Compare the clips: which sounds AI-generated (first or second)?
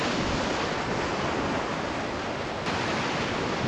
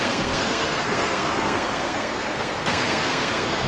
second